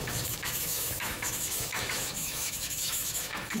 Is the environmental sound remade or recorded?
remade